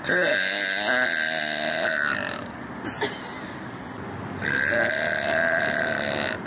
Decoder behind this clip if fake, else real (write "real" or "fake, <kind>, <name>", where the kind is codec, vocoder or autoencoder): real